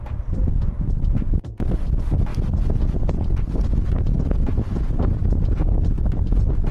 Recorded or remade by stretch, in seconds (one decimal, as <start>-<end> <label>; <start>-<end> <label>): 0.0-6.7 recorded